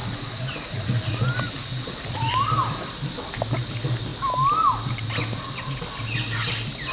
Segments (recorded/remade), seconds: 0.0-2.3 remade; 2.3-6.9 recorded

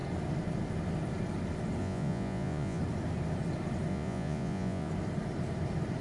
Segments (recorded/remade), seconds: 0.0-1.8 recorded; 1.8-2.8 remade; 2.8-3.9 recorded; 3.9-4.9 remade; 4.9-6.0 recorded

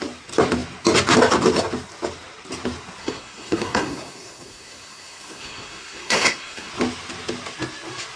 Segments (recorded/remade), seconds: 0.0-3.0 recorded; 3.0-6.7 remade; 6.7-8.2 recorded

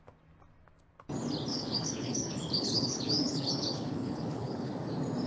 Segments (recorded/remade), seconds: 0.0-1.5 recorded; 1.5-4.7 remade; 4.7-5.3 recorded

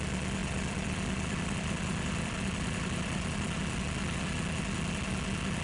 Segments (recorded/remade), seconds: 0.0-0.4 recorded; 0.4-3.8 remade; 3.8-5.6 recorded

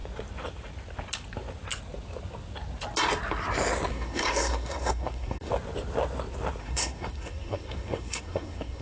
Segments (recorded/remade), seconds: 0.0-3.9 recorded; 3.9-5.5 remade; 5.5-6.6 recorded; 6.6-8.8 remade

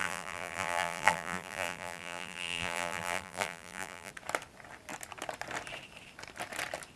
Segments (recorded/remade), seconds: 0.0-4.1 remade; 4.1-7.0 recorded